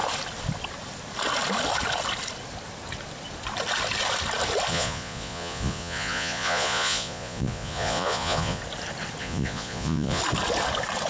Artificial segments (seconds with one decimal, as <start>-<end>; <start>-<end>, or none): 4.7-8.6; 9.2-10.2

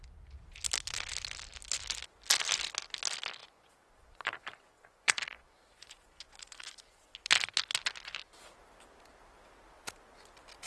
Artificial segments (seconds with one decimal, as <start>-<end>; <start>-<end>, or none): 3.4-7.1

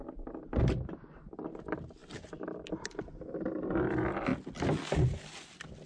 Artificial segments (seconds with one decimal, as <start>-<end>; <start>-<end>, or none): none

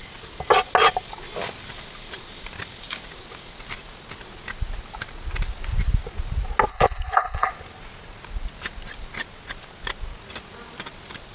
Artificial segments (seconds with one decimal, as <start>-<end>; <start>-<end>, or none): 6.7-7.5